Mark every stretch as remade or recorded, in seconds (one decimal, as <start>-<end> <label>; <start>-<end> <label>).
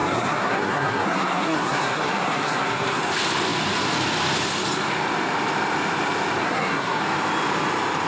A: 0.0-3.0 remade; 3.0-6.4 recorded; 6.4-7.0 remade; 7.0-8.1 recorded